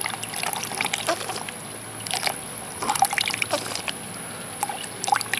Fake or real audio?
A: real